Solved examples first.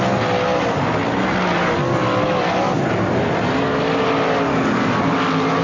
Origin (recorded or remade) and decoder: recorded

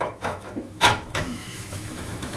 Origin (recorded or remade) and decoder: remade, autoencoder, DAC-VAE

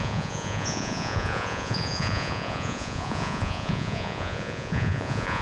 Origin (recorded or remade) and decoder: remade, vocoder, Vocos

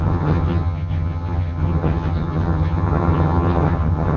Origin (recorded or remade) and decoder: remade, vocoder, HiFi-GAN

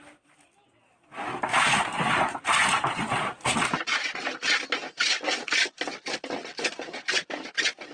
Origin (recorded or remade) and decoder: recorded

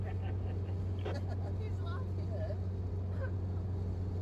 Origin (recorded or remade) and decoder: recorded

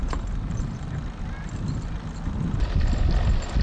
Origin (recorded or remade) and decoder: recorded